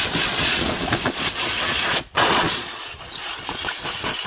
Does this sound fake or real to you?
fake